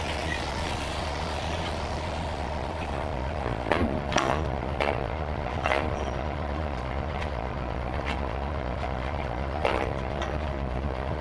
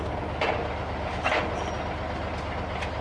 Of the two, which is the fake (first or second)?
first